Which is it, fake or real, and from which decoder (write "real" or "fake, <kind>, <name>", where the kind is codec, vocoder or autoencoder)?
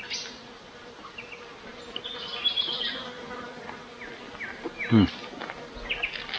real